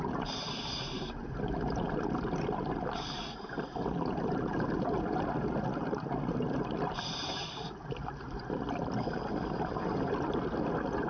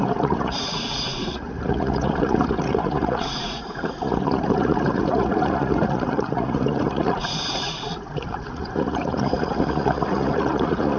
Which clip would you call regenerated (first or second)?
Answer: second